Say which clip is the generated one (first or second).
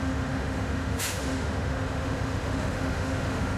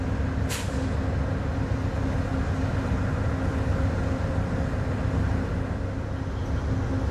first